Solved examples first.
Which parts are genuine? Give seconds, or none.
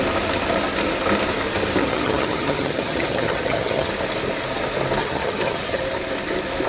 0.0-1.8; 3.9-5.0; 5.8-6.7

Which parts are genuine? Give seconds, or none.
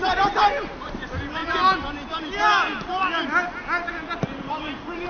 1.4-4.5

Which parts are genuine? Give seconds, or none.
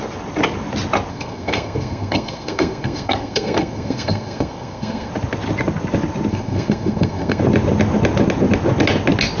0.0-1.1; 5.1-6.3; 7.4-9.4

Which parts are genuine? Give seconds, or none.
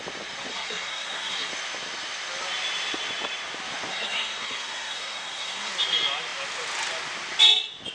0.0-0.5; 1.5-3.9; 5.7-7.9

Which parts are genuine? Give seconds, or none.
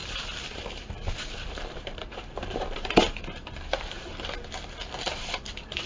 4.1-5.2